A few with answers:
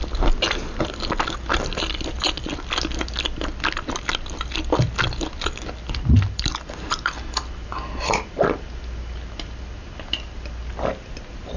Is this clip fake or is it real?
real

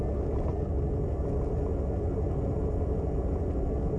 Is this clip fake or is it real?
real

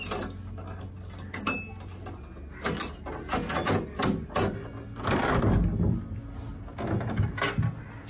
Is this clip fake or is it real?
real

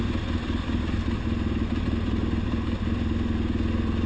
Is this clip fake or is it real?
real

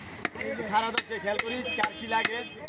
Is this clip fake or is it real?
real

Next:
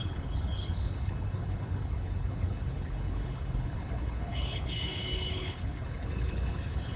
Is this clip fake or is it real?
fake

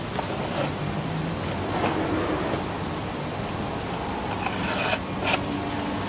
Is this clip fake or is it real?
real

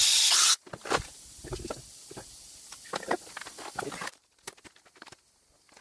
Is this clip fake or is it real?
real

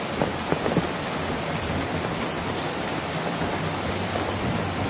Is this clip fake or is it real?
real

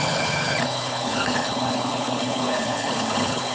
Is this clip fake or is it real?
fake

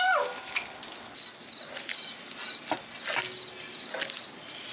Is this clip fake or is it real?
real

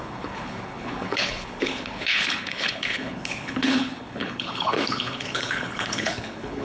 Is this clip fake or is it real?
fake